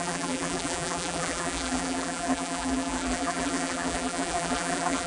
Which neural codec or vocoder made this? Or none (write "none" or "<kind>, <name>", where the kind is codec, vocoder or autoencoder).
vocoder, BigVGAN v2